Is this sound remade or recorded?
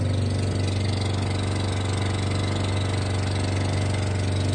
recorded